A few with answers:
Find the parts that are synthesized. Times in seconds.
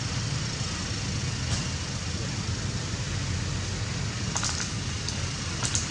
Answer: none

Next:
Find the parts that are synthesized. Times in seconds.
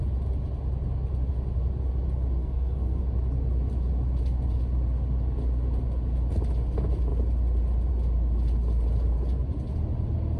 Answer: 2.4-3.0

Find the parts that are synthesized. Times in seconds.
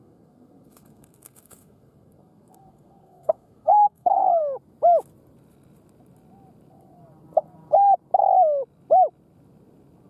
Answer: 0.0-4.4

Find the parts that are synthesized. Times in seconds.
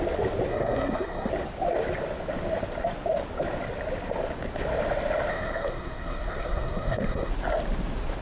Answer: 0.5-1.3; 5.3-7.3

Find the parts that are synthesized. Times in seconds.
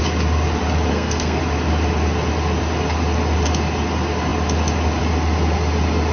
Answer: 0.9-1.4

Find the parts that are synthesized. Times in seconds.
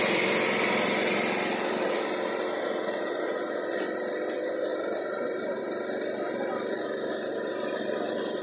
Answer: none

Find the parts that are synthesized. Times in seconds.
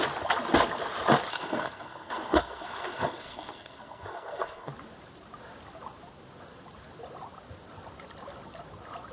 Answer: 1.3-4.7